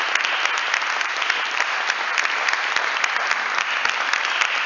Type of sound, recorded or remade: recorded